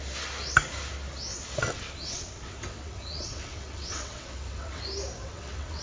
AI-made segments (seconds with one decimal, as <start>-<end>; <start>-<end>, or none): 1.3-4.8; 5.2-5.8